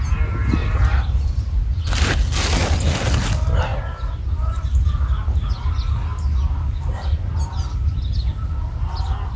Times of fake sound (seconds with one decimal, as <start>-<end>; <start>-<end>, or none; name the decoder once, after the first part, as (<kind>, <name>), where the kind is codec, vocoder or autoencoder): 0.6-1.8 (vocoder, BigVGAN v2)